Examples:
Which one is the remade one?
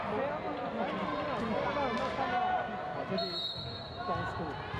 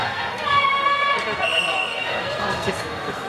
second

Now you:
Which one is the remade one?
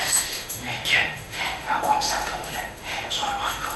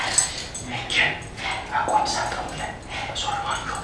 first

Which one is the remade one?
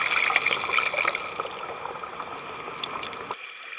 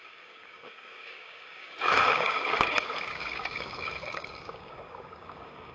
second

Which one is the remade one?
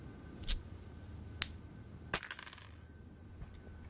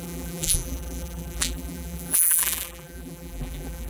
second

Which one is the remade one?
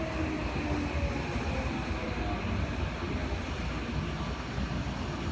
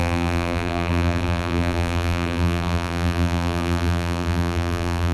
second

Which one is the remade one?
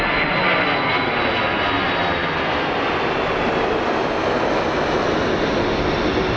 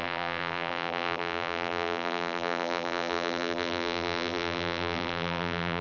second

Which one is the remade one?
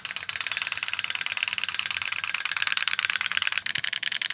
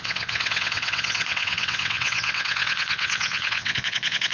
second